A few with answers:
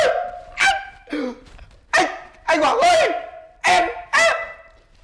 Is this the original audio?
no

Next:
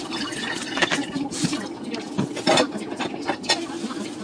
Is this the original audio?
yes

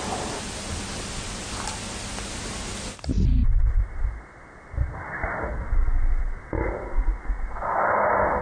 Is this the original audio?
yes